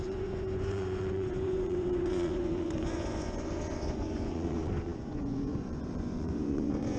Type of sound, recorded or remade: remade